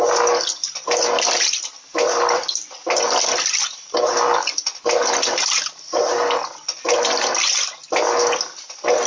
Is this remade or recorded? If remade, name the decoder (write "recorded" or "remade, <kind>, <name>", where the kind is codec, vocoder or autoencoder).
recorded